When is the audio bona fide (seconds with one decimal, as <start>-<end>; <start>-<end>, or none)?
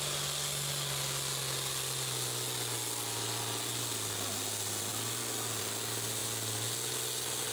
0.0-7.5